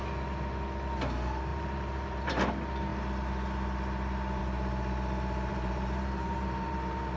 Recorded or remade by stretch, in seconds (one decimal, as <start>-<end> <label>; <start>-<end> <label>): 0.0-1.5 recorded; 1.5-2.3 remade; 2.3-5.5 recorded; 5.5-7.2 remade